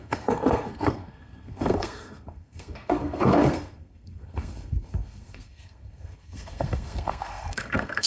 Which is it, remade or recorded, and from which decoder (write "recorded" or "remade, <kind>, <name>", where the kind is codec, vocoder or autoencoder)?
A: remade, codec, SNAC